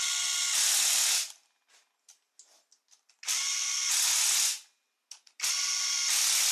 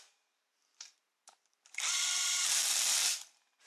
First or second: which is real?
first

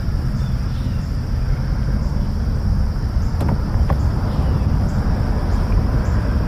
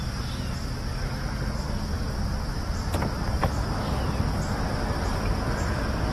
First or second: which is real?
second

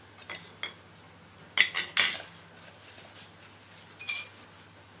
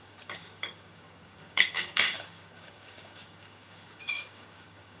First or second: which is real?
first